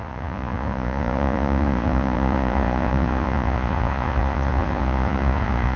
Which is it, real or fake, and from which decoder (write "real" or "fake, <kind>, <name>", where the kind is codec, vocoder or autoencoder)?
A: fake, vocoder, Vocos